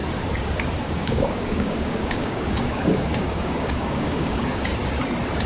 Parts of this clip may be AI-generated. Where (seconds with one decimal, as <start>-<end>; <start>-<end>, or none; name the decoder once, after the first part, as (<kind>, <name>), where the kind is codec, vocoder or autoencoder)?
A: 0.8-4.7 (codec, DAC)